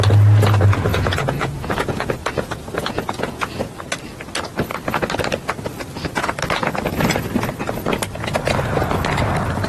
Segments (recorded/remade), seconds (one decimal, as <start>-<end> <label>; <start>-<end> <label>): 0.0-0.9 recorded; 0.9-3.8 remade; 3.8-9.7 recorded